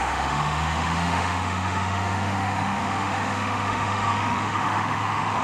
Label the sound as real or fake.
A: fake